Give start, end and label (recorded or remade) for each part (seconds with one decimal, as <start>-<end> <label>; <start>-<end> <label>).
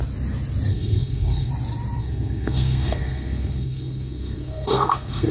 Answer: 0.0-0.7 recorded; 0.7-1.5 remade; 1.5-2.0 recorded; 2.0-5.3 remade